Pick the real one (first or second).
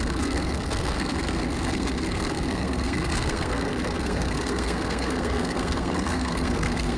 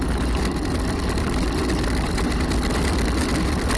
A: second